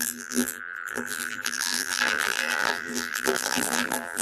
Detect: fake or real fake